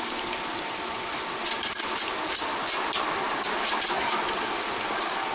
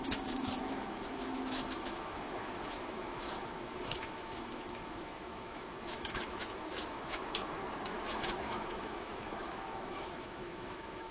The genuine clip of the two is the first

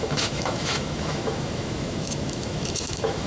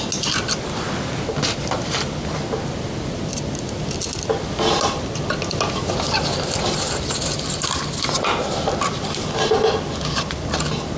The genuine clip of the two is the second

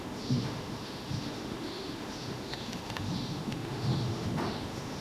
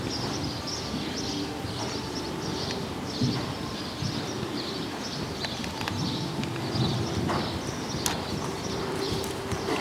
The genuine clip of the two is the second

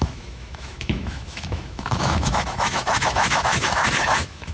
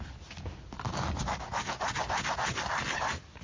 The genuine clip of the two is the second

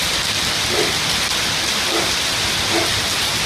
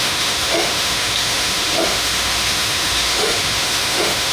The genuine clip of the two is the first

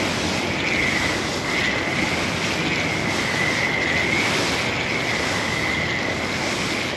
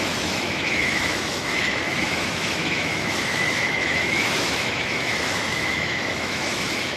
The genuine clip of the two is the first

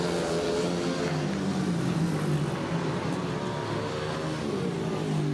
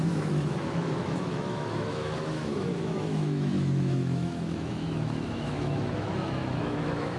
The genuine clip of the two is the first